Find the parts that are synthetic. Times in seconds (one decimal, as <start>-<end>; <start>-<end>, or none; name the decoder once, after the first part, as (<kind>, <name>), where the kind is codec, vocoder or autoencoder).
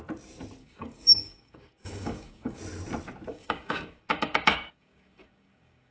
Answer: 0.6-2.6 (codec, DAC); 3.3-5.9